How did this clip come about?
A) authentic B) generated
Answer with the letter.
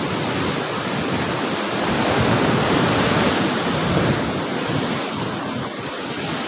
A